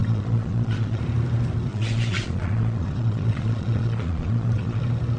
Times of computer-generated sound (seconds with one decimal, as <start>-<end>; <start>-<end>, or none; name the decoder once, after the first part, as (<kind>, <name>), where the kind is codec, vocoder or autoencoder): 0.0-1.0 (vocoder, Vocos); 1.7-4.8